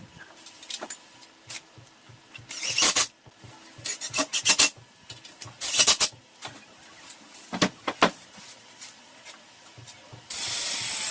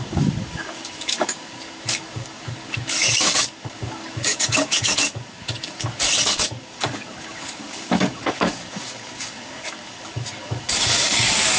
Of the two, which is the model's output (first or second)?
second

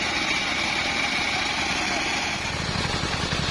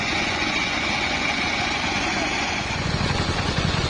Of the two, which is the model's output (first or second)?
second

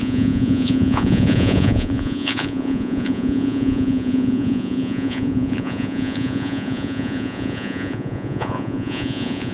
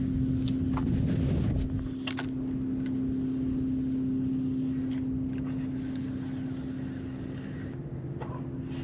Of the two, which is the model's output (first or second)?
first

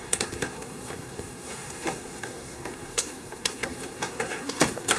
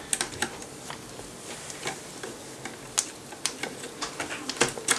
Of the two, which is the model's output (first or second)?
first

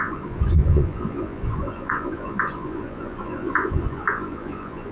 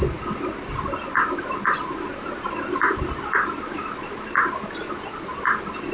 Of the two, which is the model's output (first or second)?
first